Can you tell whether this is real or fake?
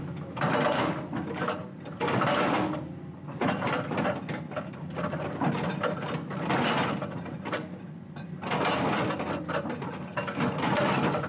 real